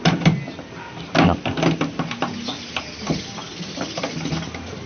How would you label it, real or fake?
real